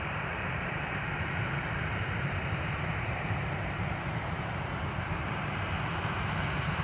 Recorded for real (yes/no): no